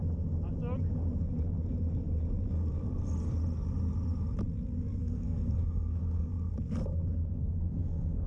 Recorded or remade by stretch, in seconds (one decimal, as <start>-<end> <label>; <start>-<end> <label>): 0.0-5.0 recorded; 5.0-6.3 remade; 6.3-7.3 recorded; 7.3-8.3 remade